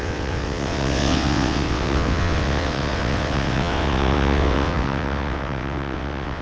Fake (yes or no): yes